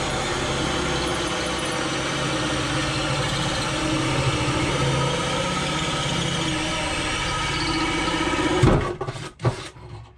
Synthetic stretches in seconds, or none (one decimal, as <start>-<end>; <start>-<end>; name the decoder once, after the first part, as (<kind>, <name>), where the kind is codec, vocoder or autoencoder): none